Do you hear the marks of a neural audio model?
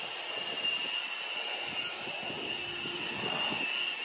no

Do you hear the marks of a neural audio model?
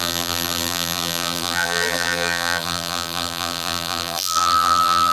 yes